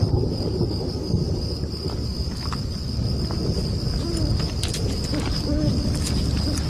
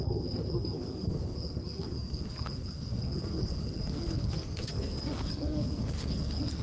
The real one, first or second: first